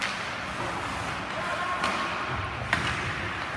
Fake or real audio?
real